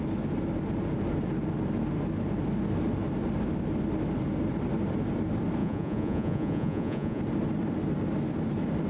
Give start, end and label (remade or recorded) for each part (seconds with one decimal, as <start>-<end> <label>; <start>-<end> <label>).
0.0-5.6 recorded; 5.6-7.2 remade; 7.2-8.9 recorded